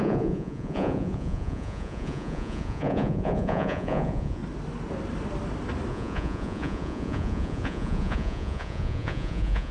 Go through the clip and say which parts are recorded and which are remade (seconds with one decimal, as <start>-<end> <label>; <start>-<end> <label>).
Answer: 0.0-4.4 remade; 4.4-5.9 recorded; 5.9-9.7 remade